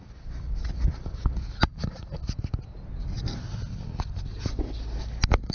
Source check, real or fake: real